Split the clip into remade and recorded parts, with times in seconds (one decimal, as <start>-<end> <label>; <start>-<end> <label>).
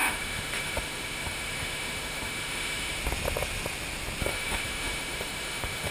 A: 0.0-3.0 remade; 3.0-4.2 recorded; 4.2-5.9 remade